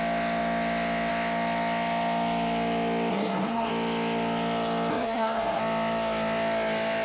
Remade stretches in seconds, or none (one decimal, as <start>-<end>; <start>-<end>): 3.1-3.7; 4.9-5.6